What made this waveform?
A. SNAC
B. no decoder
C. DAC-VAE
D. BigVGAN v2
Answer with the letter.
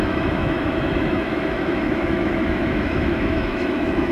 C